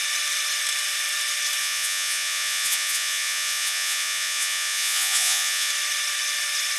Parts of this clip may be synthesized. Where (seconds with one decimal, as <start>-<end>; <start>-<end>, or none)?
1.6-5.7